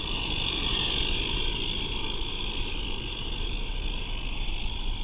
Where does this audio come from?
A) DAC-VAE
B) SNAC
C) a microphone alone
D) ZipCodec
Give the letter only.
C